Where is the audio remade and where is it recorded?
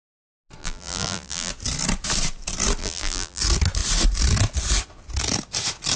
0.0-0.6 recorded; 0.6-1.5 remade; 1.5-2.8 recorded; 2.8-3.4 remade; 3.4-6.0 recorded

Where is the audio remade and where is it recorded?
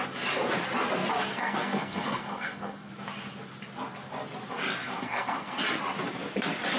0.0-1.3 recorded; 1.3-2.9 remade; 2.9-4.8 recorded; 4.8-5.6 remade; 5.6-6.8 recorded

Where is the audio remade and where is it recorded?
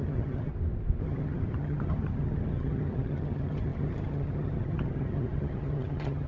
0.0-0.5 remade; 0.5-1.0 recorded; 1.0-6.3 remade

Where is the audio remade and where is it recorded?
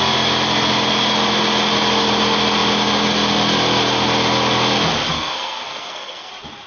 0.0-5.1 recorded; 5.1-6.3 remade; 6.3-6.7 recorded